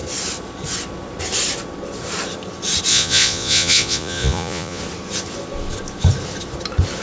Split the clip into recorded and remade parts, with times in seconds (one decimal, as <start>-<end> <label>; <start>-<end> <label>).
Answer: 0.0-2.9 recorded; 2.9-4.8 remade; 4.8-7.0 recorded